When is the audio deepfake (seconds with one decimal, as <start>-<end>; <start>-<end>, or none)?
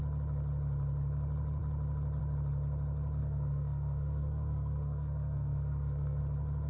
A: 3.2-6.2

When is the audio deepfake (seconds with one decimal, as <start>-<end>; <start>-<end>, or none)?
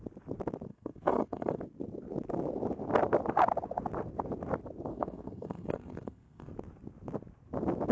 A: 0.7-1.6; 4.9-6.5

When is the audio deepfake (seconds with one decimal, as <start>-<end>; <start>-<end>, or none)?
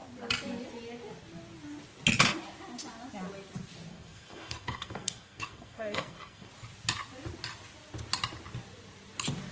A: 3.9-6.5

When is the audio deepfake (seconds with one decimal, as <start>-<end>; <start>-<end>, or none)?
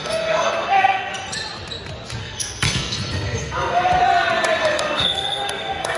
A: 0.0-1.1; 2.2-4.0; 4.6-6.0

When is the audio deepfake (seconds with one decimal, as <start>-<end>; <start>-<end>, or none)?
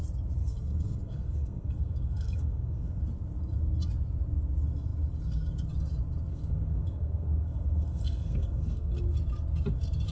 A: 0.4-3.0; 6.3-8.9